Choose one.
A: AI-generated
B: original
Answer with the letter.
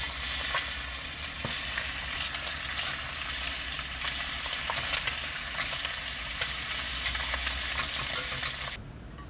B